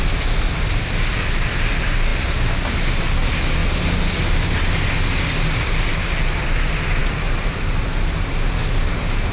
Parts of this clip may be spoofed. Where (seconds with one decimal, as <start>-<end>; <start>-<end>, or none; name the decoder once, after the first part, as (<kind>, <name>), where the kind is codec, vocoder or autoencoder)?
none